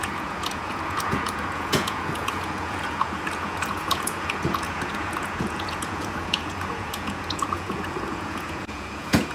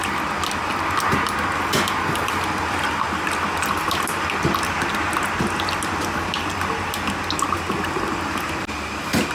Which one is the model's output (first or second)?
first